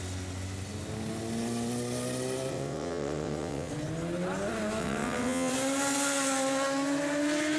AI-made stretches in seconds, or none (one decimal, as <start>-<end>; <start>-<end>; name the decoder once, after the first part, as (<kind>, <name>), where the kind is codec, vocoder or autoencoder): 2.5-3.7 (vocoder, WaveNeXt); 4.8-5.5